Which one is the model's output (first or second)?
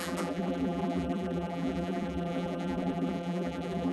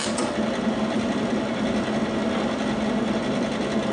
first